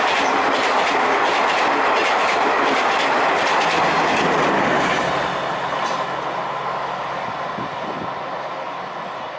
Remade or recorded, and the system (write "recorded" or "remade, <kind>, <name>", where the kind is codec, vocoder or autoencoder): recorded